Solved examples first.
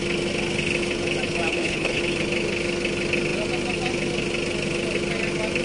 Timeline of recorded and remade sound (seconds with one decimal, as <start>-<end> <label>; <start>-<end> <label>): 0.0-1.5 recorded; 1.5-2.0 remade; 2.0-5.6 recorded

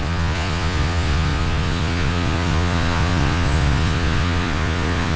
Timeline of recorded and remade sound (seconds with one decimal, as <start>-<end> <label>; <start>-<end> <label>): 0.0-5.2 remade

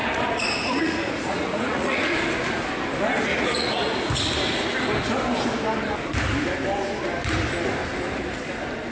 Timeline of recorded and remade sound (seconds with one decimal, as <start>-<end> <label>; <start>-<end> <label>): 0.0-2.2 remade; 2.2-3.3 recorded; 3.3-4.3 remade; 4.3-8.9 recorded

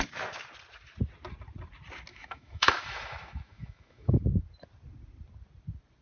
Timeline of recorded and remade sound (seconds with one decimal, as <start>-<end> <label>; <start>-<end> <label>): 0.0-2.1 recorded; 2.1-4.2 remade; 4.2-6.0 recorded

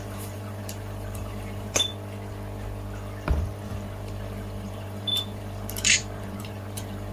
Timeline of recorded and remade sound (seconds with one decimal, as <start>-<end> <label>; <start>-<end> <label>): 0.0-1.9 remade; 1.9-3.7 recorded; 3.7-7.1 remade